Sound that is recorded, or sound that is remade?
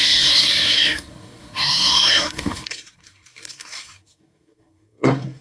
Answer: remade